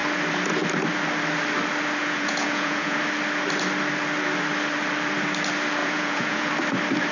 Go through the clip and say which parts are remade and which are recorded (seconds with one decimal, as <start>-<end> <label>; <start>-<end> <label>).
0.0-2.0 recorded; 2.0-3.0 remade; 3.0-5.8 recorded; 5.8-6.5 remade; 6.5-7.1 recorded